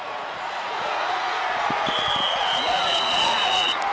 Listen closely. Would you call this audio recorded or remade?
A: remade